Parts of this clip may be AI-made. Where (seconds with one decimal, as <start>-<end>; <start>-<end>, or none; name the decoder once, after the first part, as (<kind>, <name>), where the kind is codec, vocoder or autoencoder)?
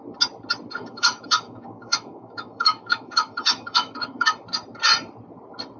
0.8-4.3 (autoencoder, DAC-VAE)